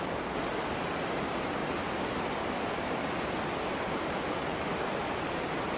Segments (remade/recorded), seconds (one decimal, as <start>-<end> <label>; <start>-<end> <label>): 0.0-5.8 recorded